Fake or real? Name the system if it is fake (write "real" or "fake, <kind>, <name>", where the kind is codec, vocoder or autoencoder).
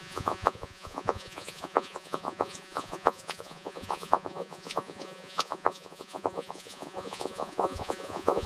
fake, vocoder, Vocos